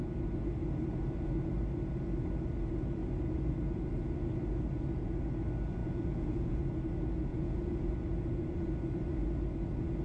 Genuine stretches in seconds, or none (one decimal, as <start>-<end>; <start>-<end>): 0.0-5.8; 6.6-7.3; 7.9-10.0